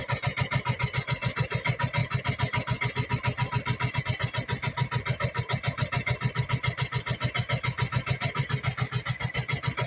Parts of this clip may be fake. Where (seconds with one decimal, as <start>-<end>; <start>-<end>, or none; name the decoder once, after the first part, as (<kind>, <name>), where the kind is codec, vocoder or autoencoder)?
none